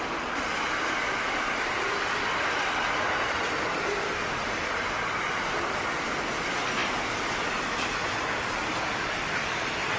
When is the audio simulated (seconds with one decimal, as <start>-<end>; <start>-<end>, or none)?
none

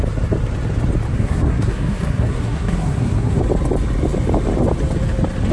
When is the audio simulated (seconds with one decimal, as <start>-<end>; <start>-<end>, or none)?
1.1-3.4

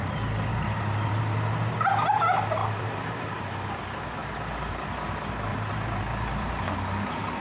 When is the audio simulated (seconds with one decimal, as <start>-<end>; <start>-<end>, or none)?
0.5-1.2; 2.6-3.5; 4.2-4.9; 5.5-6.5

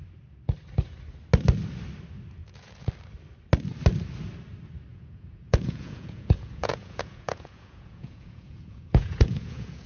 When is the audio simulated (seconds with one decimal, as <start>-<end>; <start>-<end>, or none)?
2.4-2.9; 4.9-9.9